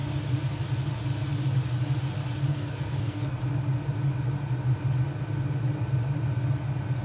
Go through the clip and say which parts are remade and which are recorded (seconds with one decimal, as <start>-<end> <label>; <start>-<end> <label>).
0.0-2.5 recorded; 2.5-3.4 remade; 3.4-7.0 recorded

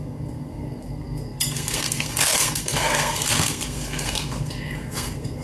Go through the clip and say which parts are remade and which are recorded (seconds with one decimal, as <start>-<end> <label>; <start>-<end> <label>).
0.0-5.4 remade